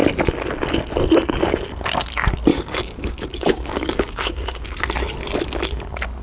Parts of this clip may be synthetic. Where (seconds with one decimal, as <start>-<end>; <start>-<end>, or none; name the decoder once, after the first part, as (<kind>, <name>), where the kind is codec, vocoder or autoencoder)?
2.5-4.7 (codec, DAC)